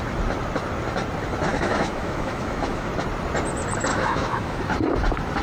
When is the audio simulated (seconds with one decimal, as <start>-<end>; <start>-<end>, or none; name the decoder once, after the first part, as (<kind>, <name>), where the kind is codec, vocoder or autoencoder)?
1.5-2.9 (autoencoder, DAC-VAE); 3.9-4.6